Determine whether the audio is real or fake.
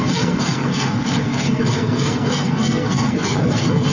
fake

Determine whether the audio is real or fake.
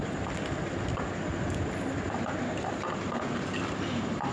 real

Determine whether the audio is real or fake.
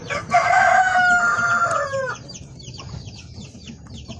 fake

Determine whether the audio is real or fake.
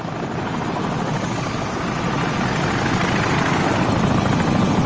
real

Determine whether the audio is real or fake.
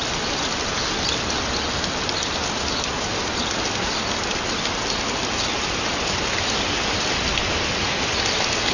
real